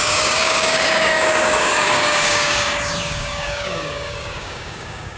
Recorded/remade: remade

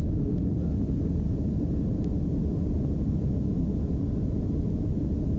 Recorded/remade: recorded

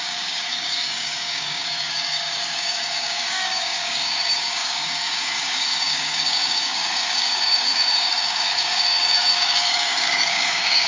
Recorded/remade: remade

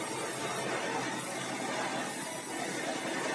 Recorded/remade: recorded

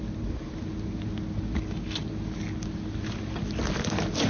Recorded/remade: recorded